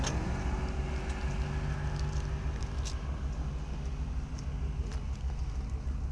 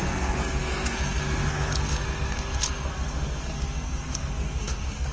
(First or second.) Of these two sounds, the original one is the first